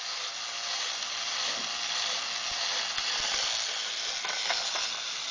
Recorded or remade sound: recorded